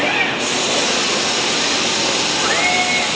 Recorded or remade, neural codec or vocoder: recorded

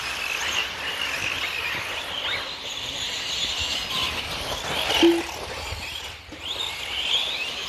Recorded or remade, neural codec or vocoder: recorded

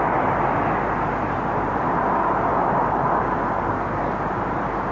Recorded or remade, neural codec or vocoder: recorded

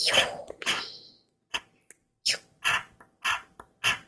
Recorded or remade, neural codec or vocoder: recorded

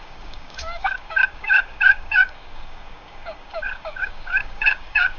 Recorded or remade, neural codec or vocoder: remade, codec, DAC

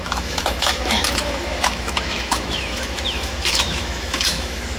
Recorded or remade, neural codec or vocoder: remade, autoencoder, DAC-VAE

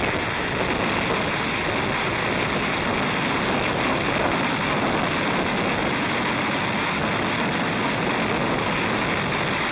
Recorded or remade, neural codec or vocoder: recorded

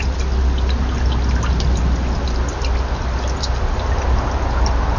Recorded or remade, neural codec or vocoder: recorded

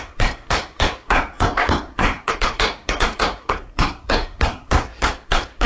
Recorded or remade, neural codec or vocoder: remade, codec, SNAC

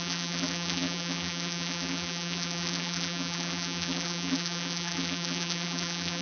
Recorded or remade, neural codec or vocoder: remade, vocoder, BigVGAN v2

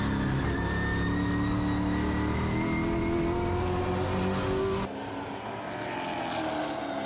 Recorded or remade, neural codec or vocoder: recorded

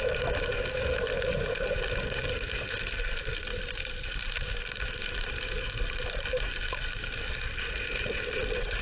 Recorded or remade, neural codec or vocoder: recorded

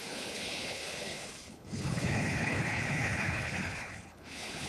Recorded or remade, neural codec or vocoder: remade, codec, HILCodec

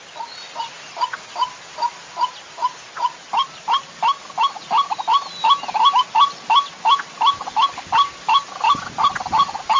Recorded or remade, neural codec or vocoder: recorded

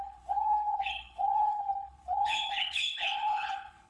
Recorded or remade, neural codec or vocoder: remade, codec, HILCodec